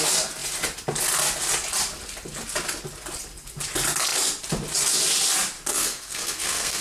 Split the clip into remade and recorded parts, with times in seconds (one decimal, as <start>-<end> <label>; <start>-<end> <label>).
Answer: 0.0-5.7 recorded; 5.7-6.8 remade